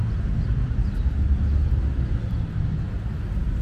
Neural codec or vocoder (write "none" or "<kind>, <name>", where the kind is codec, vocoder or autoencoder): none